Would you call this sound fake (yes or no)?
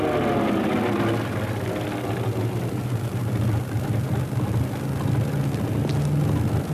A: no